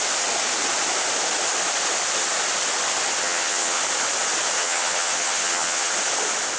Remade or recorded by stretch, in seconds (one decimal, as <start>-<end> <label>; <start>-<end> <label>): 0.0-3.2 recorded; 3.2-3.8 remade; 3.8-4.6 recorded; 4.6-5.9 remade; 5.9-6.6 recorded